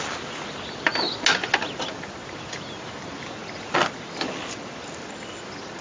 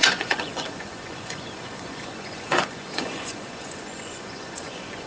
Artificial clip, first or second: second